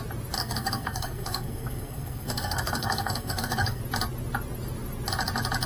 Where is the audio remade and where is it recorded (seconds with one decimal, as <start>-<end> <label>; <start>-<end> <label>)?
0.0-0.4 recorded; 0.4-3.8 remade; 3.8-5.7 recorded